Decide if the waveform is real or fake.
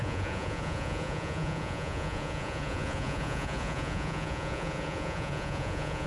fake